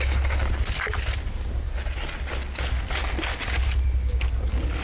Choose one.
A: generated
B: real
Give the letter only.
B